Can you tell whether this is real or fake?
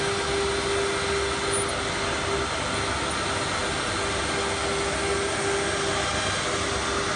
real